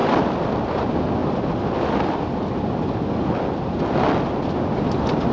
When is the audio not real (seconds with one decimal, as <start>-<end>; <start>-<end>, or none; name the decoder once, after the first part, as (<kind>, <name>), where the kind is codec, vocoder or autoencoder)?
none